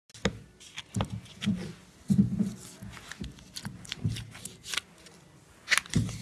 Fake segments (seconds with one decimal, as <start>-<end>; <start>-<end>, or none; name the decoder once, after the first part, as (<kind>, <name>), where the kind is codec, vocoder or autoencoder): none